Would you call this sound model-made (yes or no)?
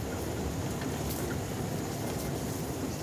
no